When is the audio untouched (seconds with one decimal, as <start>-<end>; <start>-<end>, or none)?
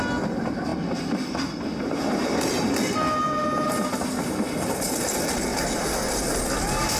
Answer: 0.0-7.0